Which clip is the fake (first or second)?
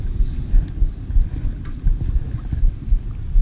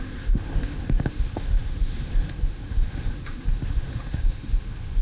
second